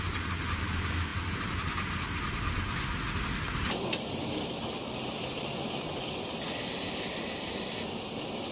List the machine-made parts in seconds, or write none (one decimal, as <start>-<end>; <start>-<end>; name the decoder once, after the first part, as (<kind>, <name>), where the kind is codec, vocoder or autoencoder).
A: none